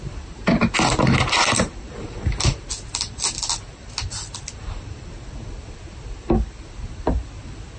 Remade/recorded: recorded